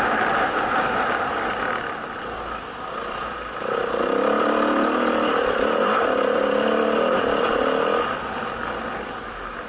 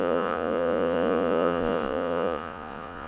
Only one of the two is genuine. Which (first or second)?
first